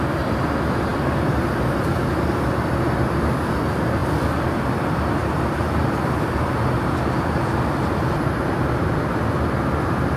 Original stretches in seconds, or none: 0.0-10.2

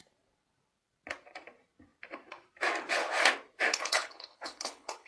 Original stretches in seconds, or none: 0.0-3.7

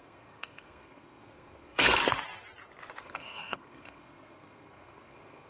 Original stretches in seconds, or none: 2.0-3.0

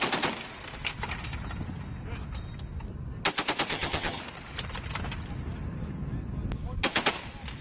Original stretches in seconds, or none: 0.0-3.7; 4.2-7.6

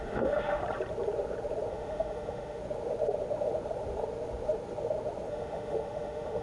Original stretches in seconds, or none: 0.6-1.7; 2.6-5.3

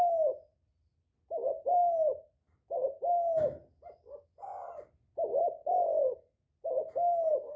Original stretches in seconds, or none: 0.0-7.6